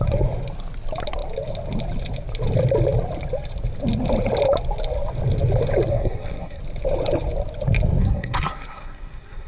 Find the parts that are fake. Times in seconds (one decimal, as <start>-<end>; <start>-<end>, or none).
5.9-6.6; 8.0-9.5